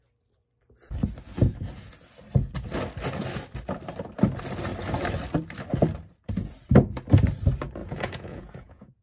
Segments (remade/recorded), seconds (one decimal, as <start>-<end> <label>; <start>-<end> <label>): 0.0-7.8 recorded; 7.8-9.0 remade